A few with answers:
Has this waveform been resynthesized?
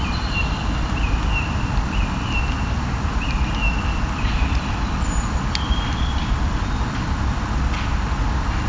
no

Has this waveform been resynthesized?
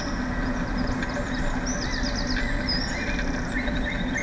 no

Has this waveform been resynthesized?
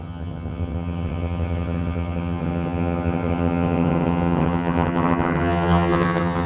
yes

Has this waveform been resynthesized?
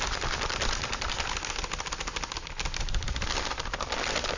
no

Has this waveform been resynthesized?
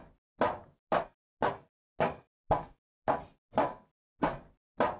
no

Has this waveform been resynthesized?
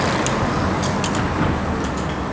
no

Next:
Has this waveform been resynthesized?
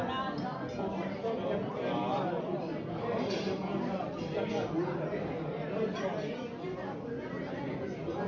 no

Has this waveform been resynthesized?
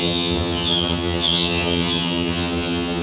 yes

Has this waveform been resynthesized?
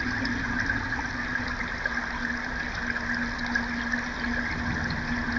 no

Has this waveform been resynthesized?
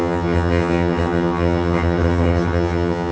yes